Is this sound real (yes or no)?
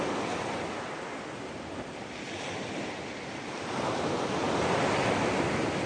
yes